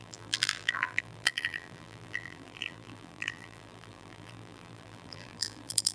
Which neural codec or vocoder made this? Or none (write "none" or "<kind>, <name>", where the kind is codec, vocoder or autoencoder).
vocoder, BigVGAN v2